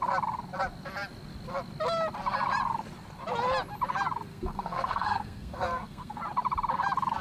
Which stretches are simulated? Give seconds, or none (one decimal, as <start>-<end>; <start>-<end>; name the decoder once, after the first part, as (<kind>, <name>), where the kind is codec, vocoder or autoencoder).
4.3-6.2 (codec, SNAC)

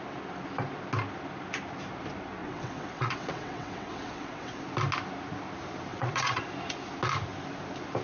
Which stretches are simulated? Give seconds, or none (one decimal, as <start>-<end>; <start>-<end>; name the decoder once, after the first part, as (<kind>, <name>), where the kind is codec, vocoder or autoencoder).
2.4-4.6 (vocoder, WaveNeXt); 5.9-6.4

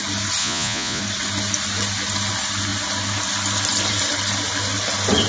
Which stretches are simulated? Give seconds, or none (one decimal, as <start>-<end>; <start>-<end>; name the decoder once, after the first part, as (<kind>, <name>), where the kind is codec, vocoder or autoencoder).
0.4-1.0 (vocoder, Vocos)